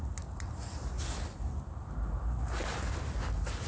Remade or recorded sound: recorded